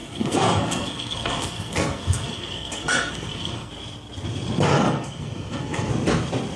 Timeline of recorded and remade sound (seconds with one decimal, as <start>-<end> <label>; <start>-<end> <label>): 0.0-3.7 remade; 3.7-4.7 recorded; 4.7-5.9 remade; 5.9-6.6 recorded